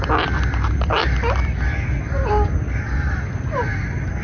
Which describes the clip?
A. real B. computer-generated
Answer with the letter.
B